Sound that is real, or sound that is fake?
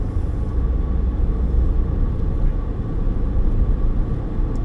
real